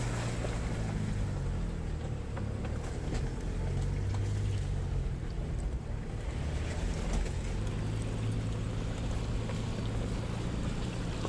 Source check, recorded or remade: recorded